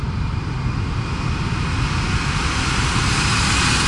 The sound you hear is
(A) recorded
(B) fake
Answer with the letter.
A